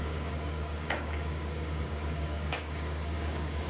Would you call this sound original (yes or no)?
no